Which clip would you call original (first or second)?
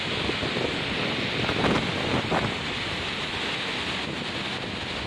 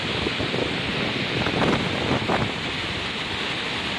first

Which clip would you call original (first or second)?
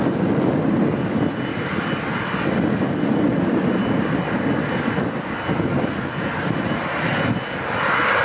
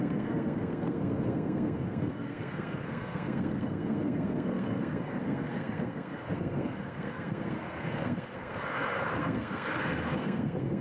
first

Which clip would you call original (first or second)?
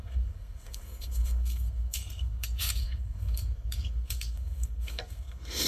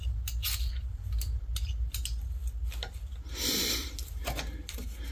second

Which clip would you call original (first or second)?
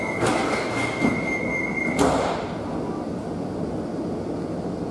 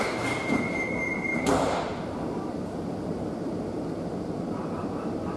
first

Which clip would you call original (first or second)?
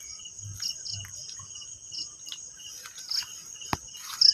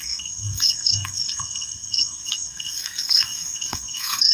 first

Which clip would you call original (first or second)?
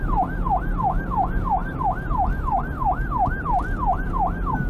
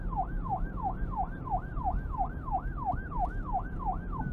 first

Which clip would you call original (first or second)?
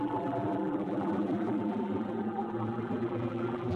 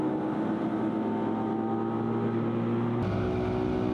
second